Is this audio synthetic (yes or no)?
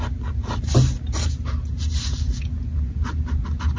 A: no